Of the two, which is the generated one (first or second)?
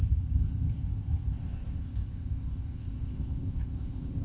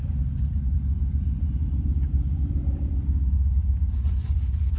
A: first